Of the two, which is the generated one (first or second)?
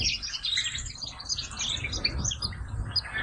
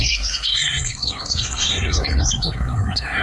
second